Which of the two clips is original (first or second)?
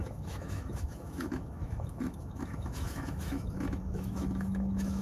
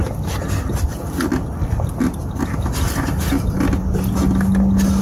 second